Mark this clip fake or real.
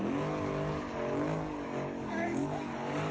fake